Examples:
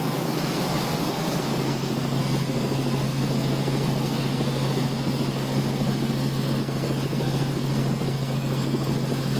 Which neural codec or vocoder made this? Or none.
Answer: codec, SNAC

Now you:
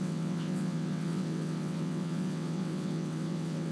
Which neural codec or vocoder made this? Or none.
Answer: vocoder, WaveNeXt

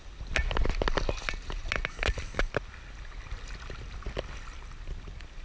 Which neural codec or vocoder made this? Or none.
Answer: none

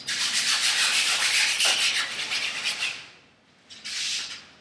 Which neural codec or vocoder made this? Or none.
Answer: none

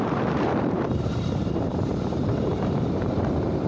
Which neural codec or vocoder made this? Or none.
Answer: vocoder, BigVGAN v2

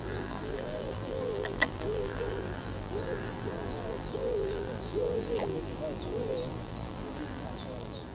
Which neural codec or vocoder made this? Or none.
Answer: vocoder, BigVGAN v2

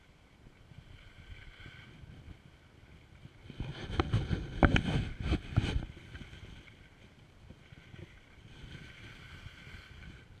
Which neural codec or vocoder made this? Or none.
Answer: none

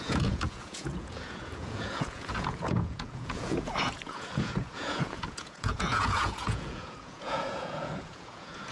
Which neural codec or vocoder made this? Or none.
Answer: vocoder, Vocos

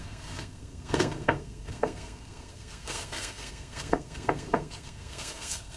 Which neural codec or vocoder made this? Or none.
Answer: codec, SNAC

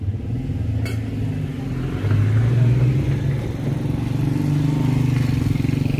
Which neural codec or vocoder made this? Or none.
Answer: none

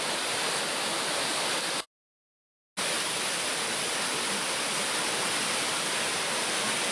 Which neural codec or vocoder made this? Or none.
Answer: none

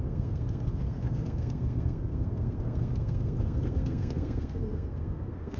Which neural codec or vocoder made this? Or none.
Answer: codec, SNAC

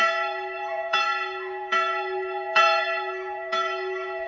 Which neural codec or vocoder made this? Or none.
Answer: vocoder, Vocos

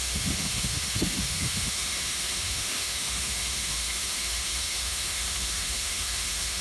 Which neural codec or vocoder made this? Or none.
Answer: autoencoder, DAC-VAE